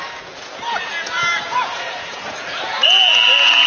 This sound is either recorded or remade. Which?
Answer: remade